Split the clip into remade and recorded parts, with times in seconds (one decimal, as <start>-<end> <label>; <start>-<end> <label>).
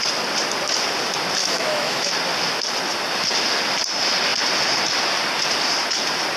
0.0-1.4 recorded; 1.4-2.1 remade; 2.1-6.4 recorded